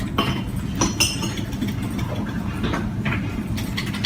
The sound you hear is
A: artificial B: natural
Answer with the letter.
B